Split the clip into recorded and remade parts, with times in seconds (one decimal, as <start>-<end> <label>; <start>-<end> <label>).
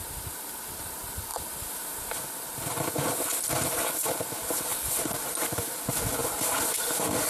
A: 0.0-1.3 recorded; 1.3-3.5 remade; 3.5-6.2 recorded; 6.2-7.3 remade